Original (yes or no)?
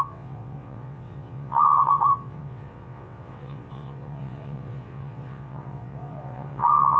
no